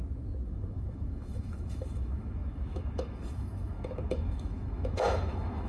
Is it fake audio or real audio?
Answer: fake